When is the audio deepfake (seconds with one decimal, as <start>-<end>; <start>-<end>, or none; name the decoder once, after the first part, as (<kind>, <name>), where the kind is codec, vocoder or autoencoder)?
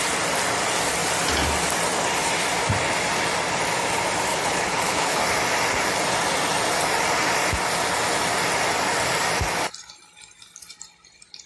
4.3-5.2 (codec, HILCodec)